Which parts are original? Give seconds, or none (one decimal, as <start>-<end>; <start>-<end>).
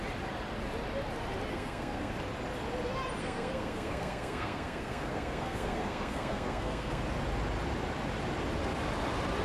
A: 0.0-1.5; 2.1-3.2; 7.0-9.4